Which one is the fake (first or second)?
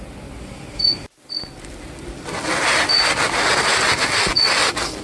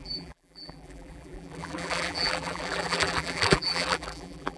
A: second